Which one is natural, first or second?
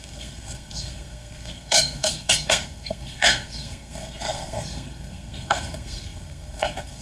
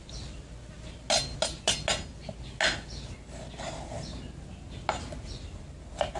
second